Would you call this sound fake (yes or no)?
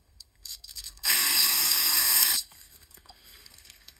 yes